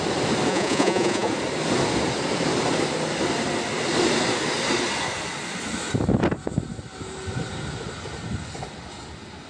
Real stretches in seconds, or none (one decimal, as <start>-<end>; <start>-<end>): 0.0-0.5; 1.3-9.5